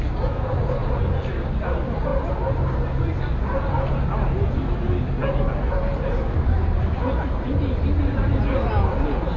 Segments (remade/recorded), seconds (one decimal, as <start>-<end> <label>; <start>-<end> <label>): 0.0-9.4 recorded